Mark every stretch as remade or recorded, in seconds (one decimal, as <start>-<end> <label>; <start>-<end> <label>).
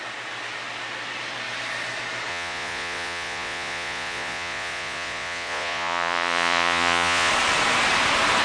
0.0-2.3 recorded; 2.3-7.3 remade; 7.3-8.4 recorded